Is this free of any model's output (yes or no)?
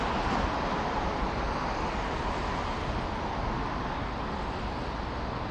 yes